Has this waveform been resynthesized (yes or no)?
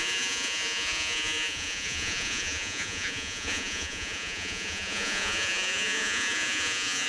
yes